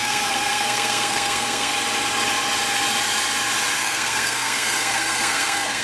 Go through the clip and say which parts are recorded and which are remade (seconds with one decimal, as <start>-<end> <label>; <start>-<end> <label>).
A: 0.0-1.7 remade; 1.7-3.8 recorded; 3.8-5.8 remade